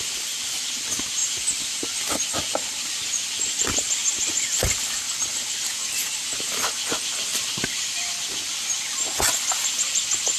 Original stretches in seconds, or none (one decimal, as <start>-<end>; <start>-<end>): 0.0-5.8; 6.6-7.3; 8.1-10.4